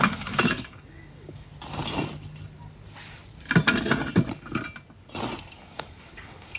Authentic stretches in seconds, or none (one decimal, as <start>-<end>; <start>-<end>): 1.5-5.5